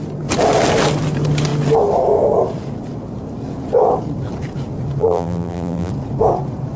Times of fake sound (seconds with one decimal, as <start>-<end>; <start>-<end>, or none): 5.0-5.9